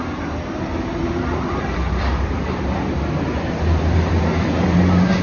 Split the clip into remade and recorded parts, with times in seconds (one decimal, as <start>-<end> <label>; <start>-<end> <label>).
0.0-1.0 recorded; 1.0-4.1 remade; 4.1-5.2 recorded